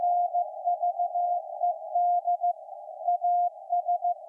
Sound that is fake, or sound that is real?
real